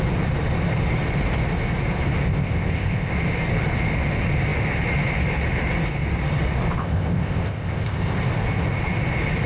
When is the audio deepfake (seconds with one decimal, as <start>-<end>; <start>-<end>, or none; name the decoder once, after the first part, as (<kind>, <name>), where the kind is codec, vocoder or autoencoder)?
2.2-3.1 (codec, ZipCodec); 6.8-8.2